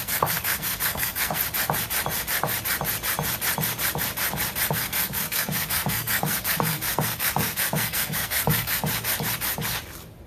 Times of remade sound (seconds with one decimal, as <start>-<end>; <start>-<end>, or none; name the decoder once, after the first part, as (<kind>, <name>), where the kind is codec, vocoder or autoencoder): 0.0-1.4 (codec, SNAC); 4.7-8.8

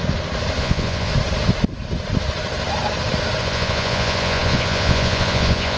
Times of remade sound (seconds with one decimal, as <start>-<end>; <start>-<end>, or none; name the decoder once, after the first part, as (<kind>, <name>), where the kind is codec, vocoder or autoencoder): 0.6-1.1 (vocoder, Vocos); 3.4-5.8